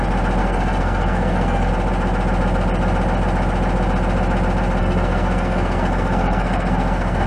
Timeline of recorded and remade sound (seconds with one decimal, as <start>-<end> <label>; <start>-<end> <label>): 0.0-0.4 recorded; 0.4-1.7 remade; 1.7-4.8 recorded; 4.8-7.3 remade